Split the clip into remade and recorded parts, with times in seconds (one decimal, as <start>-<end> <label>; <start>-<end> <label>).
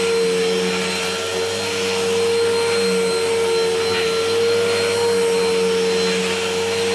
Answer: 0.0-6.9 recorded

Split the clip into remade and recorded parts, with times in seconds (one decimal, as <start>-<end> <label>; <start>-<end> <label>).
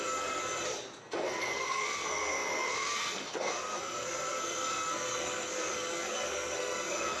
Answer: 0.0-0.4 remade; 0.4-1.0 recorded; 1.0-7.2 remade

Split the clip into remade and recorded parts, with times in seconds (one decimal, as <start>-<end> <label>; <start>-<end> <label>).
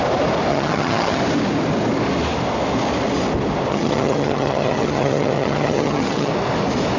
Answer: 0.0-0.5 recorded; 0.5-1.2 remade; 1.2-3.7 recorded; 3.7-6.3 remade; 6.3-7.0 recorded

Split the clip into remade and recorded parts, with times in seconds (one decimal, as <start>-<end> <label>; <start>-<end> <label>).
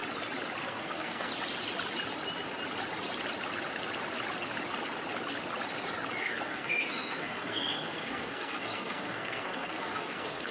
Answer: 0.0-0.6 recorded; 0.6-1.3 remade; 1.3-6.2 recorded; 6.2-10.5 remade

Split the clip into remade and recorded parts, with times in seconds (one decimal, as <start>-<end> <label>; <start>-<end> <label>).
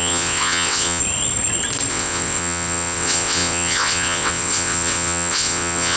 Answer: 0.0-1.0 remade; 1.0-1.9 recorded; 1.9-6.0 remade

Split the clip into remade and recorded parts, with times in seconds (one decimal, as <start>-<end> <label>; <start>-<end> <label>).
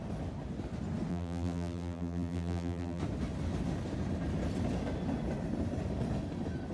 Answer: 0.0-1.1 recorded; 1.1-3.0 remade; 3.0-6.7 recorded